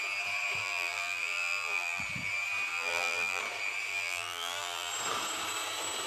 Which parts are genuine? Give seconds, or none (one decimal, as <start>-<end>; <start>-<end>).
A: 0.0-0.6; 2.0-2.7; 3.4-3.9; 4.9-6.1